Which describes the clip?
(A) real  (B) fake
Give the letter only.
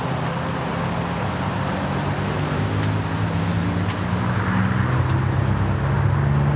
A